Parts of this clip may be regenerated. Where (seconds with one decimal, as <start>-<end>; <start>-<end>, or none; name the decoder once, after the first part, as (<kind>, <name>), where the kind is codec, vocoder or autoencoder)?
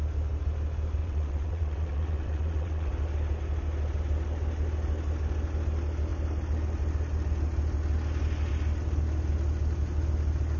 1.0-2.9 (vocoder, WaveNeXt)